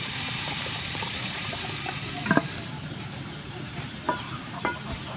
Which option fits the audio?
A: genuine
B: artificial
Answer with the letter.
B